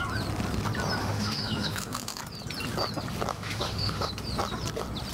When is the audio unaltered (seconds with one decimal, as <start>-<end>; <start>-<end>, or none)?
0.0-1.0; 2.2-3.3; 4.1-5.1